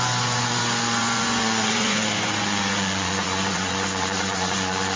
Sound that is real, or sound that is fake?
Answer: fake